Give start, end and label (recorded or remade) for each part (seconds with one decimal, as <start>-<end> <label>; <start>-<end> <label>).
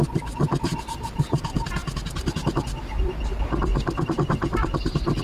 0.0-1.4 remade; 1.4-3.7 recorded; 3.7-5.2 remade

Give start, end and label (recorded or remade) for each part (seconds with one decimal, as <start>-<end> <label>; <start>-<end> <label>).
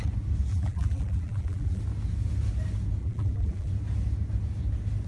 0.0-0.5 recorded; 0.5-1.8 remade; 1.8-3.0 recorded; 3.0-3.7 remade; 3.7-5.1 recorded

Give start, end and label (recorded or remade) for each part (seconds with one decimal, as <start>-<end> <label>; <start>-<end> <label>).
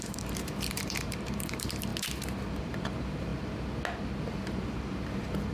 0.0-1.9 remade; 1.9-2.5 recorded; 2.5-3.3 remade; 3.3-4.5 recorded; 4.5-5.5 remade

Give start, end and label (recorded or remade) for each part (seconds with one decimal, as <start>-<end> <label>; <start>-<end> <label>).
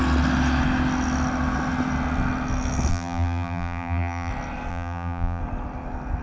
0.0-2.9 recorded; 2.9-4.3 remade; 4.3-4.7 recorded; 4.7-5.4 remade; 5.4-6.2 recorded